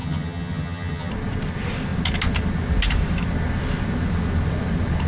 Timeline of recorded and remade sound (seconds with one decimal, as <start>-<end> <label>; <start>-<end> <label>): 0.0-1.1 remade; 1.1-5.1 recorded